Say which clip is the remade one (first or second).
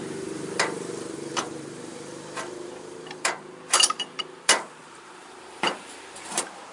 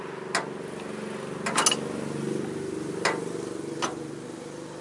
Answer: first